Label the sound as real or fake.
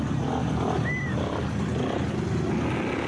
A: real